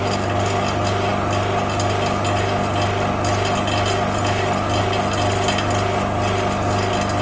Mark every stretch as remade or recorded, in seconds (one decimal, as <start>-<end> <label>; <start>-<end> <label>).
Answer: 0.0-7.2 recorded